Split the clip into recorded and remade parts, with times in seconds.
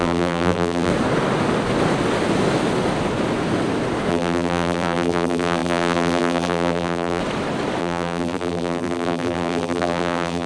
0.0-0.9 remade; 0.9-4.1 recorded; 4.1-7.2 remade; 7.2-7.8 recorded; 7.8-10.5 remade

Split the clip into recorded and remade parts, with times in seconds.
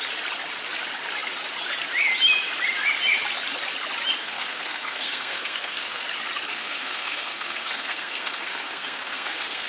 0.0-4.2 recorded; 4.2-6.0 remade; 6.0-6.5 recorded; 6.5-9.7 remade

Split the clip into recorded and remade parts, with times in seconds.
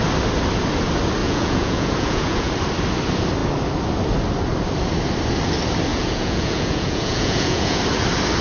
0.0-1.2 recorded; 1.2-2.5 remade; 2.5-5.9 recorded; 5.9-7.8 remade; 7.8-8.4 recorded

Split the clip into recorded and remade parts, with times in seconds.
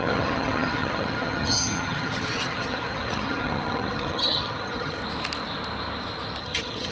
0.0-5.0 remade; 5.0-6.4 recorded; 6.4-6.9 remade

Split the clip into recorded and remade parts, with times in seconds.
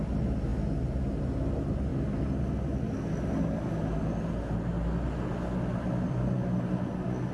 0.0-7.3 recorded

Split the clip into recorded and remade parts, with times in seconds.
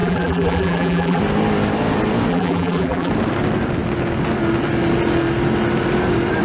0.0-1.2 remade; 1.2-2.3 recorded; 2.3-3.1 remade; 3.1-6.4 recorded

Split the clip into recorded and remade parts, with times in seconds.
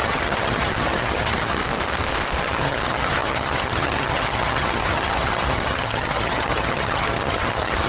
0.0-1.6 remade; 1.6-2.4 recorded; 2.4-7.9 remade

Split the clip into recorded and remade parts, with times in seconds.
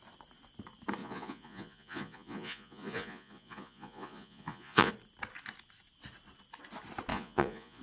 0.0-1.0 recorded; 1.0-4.9 remade; 4.9-7.1 recorded; 7.1-7.8 remade